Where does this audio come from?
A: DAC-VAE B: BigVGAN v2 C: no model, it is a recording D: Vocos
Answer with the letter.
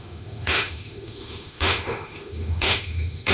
A